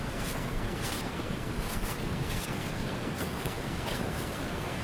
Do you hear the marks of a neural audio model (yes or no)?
yes